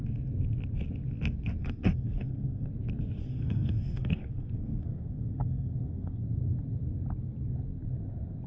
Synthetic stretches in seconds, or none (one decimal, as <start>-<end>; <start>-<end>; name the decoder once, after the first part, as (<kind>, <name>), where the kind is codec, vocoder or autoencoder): 1.6-2.7 (codec, SNAC); 3.2-6.2